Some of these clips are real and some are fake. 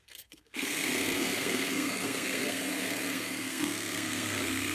fake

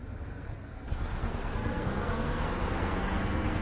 fake